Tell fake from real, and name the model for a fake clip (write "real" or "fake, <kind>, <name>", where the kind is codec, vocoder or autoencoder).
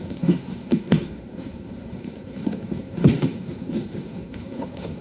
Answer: fake, codec, SNAC